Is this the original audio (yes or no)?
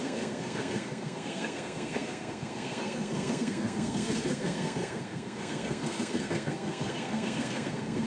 no